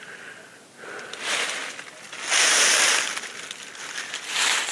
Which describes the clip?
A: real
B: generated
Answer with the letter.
A